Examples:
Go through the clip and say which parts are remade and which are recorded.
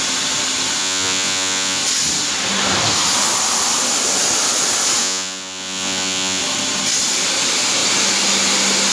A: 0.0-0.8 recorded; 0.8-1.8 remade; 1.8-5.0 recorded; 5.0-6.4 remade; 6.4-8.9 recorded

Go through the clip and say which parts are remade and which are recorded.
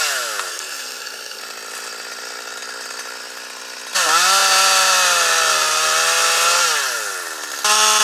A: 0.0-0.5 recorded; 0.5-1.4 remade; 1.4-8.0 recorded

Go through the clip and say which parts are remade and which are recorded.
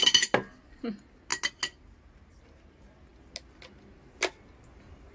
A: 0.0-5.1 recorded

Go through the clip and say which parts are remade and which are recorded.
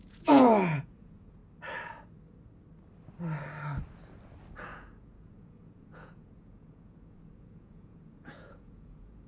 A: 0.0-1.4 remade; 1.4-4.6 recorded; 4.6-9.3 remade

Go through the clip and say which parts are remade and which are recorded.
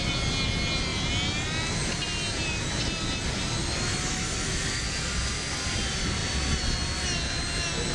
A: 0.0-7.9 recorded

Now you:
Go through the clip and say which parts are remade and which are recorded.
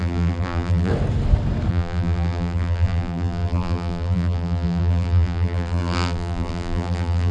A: 0.0-0.9 remade; 0.9-1.7 recorded; 1.7-7.3 remade